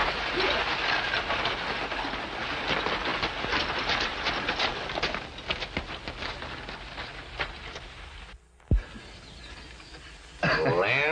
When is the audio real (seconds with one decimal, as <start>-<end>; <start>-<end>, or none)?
0.0-11.1